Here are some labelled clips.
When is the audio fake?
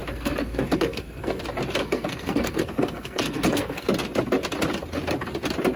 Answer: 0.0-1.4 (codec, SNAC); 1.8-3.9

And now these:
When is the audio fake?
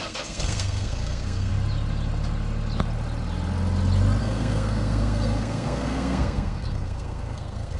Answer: 0.0-1.5 (codec, SNAC); 4.2-7.8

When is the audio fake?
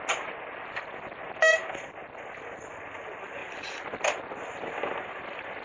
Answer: 3.4-4.2 (vocoder, BigVGAN v2)